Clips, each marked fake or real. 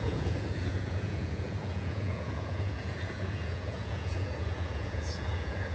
fake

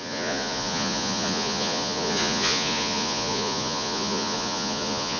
fake